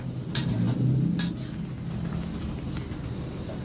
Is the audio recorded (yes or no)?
yes